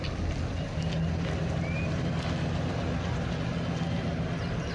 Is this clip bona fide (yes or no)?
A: yes